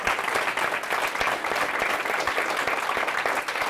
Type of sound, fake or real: real